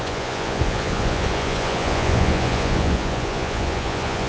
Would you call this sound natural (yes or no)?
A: no